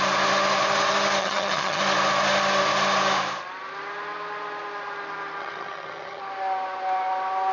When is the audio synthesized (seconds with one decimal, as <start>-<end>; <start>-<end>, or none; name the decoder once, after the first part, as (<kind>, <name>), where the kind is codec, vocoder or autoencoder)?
1.2-1.8 (vocoder, HiFi-GAN); 5.4-6.2